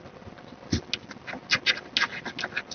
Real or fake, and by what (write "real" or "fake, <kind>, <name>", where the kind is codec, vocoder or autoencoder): real